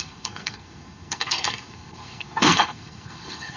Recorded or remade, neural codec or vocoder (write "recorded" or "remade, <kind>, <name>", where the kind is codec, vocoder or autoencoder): remade, codec, SNAC